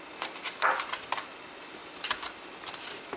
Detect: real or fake real